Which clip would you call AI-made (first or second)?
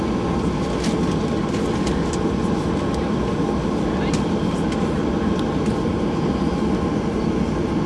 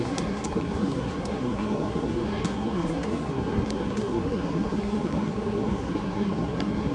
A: second